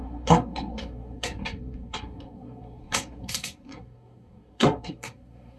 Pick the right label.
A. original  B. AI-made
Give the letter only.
B